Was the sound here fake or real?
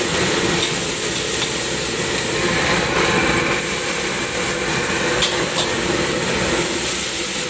real